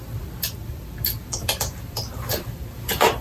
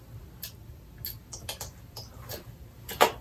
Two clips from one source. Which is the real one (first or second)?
second